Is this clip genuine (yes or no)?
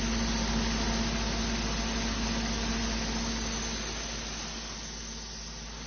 yes